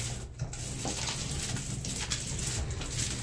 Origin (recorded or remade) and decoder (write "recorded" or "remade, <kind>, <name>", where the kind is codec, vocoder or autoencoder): recorded